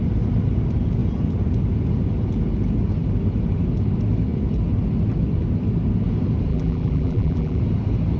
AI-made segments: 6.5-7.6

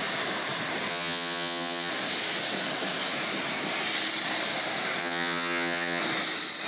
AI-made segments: 0.9-1.9; 5.0-6.0

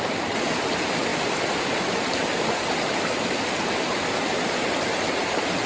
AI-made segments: 0.0-5.7

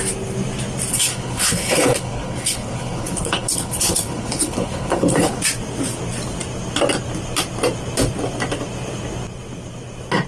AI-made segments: 0.9-5.4

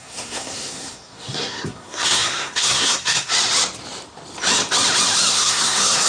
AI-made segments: 0.0-3.3; 5.3-6.1

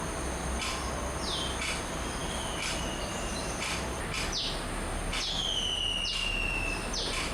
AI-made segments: none

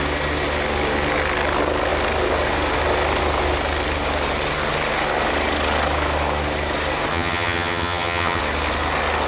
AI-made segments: 7.1-8.4

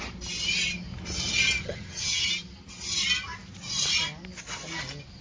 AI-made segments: 1.6-2.3